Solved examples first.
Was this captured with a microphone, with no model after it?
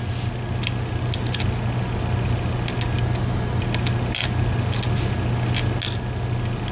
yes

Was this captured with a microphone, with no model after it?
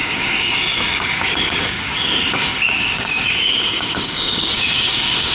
no